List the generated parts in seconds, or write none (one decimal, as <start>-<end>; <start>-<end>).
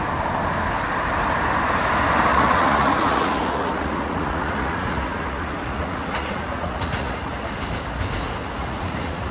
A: 2.3-7.5; 8.4-9.3